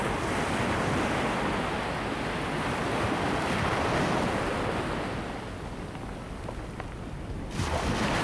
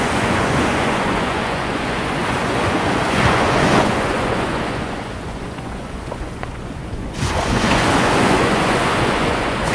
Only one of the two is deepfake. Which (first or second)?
second